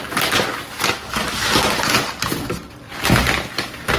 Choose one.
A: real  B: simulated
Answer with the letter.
A